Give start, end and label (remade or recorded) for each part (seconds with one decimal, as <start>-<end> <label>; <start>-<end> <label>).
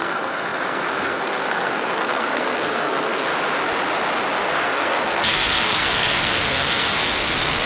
0.0-3.3 remade; 3.3-4.4 recorded; 4.4-7.7 remade